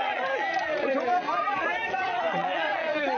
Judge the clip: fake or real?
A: fake